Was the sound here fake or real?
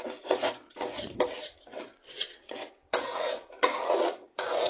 fake